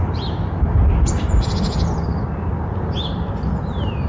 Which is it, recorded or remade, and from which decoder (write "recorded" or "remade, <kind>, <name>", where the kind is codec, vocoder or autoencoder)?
recorded